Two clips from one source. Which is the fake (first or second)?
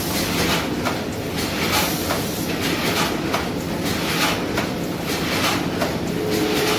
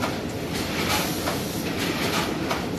second